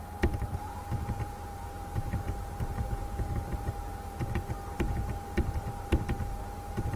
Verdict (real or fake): fake